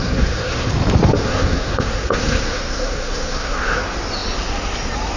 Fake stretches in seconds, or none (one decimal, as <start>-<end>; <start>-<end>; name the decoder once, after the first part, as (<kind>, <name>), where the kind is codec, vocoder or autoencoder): 0.0-0.7 (codec, SNAC); 1.2-3.8